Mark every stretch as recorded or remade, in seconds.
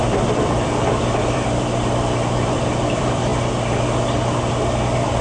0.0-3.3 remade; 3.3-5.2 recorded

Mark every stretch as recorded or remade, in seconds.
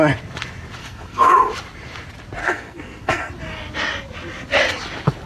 0.0-0.8 recorded; 0.8-1.5 remade; 1.5-2.4 recorded; 2.4-3.3 remade; 3.3-5.3 recorded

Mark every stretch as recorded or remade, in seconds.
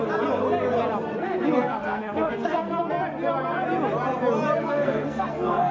0.0-1.1 recorded; 1.1-2.9 remade; 2.9-4.6 recorded; 4.6-5.7 remade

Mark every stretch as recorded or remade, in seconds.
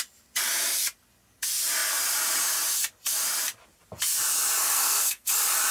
0.0-4.6 recorded; 4.6-5.3 remade; 5.3-5.7 recorded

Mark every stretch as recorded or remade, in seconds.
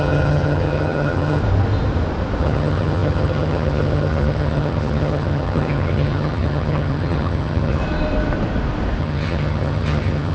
0.0-1.4 remade; 1.4-2.4 recorded; 2.4-7.8 remade; 7.8-9.0 recorded; 9.0-10.3 remade